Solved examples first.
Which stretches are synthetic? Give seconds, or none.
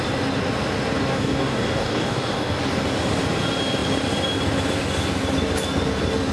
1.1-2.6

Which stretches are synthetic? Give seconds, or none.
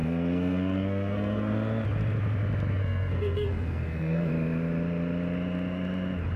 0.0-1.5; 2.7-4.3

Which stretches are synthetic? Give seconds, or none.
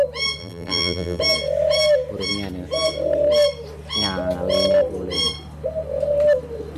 0.4-1.2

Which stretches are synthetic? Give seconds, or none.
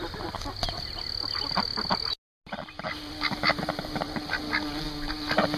none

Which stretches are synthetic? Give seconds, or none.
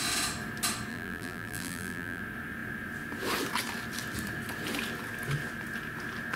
0.9-2.2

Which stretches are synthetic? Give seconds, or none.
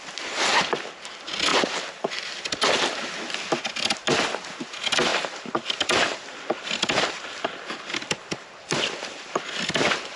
5.1-9.4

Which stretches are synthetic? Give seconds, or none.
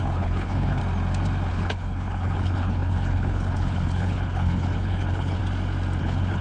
0.0-0.8; 1.5-5.4; 6.0-6.4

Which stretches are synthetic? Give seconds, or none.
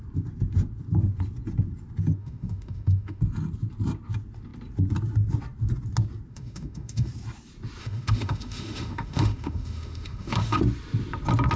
2.2-3.2; 6.3-7.1; 7.8-10.6